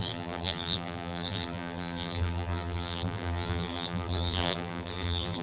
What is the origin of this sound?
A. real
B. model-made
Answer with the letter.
B